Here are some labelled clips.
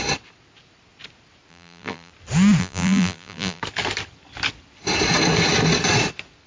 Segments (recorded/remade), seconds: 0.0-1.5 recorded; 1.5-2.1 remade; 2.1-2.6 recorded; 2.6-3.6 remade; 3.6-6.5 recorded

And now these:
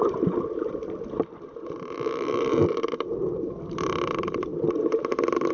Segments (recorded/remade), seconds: 0.0-5.5 remade